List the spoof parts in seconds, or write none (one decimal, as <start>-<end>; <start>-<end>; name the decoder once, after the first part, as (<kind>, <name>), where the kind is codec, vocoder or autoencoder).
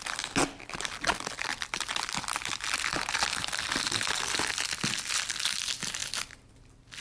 none